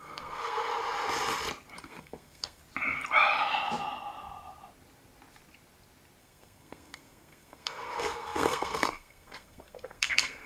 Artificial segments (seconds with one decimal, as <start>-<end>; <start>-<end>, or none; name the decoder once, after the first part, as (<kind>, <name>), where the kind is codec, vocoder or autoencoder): 0.0-0.7 (codec, SNAC); 1.8-2.6; 6.2-10.5